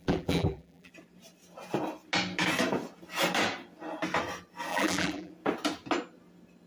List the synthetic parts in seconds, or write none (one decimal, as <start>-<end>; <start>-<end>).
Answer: 0.0-0.9; 4.7-5.3